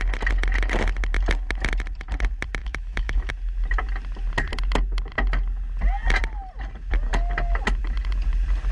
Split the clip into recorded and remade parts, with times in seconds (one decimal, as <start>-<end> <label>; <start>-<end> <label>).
0.0-2.6 recorded; 2.6-3.3 remade; 3.3-8.7 recorded